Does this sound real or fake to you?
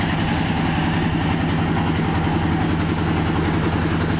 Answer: real